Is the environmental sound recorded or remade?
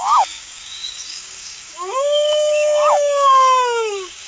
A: remade